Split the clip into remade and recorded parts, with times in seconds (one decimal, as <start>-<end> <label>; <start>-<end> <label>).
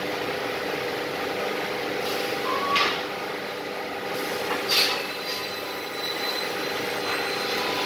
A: 0.0-5.4 recorded; 5.4-6.4 remade; 6.4-7.9 recorded